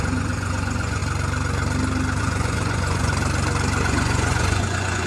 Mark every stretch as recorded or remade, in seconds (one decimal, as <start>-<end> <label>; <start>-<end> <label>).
0.0-1.0 remade; 1.0-2.2 recorded; 2.2-3.1 remade; 3.1-3.8 recorded; 3.8-5.1 remade